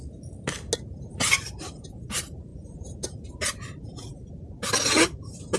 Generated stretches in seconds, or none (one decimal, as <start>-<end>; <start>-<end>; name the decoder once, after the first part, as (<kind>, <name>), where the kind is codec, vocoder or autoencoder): none